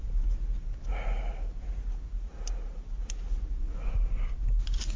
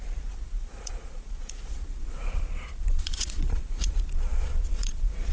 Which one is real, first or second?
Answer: first